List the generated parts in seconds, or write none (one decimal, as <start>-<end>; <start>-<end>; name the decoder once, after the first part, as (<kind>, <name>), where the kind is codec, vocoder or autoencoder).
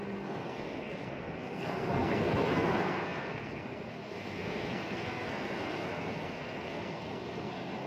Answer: 0.0-7.9 (codec, SNAC)